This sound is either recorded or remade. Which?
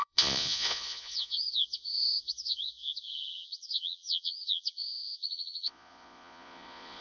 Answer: remade